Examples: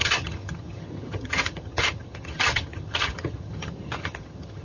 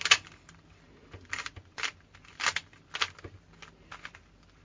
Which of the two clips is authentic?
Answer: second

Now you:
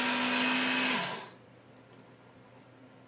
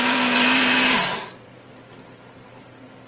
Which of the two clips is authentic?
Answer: first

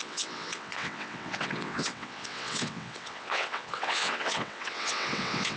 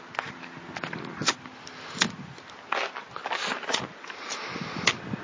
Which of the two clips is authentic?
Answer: second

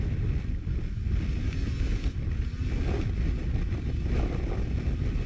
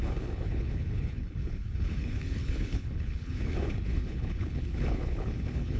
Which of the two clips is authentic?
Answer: first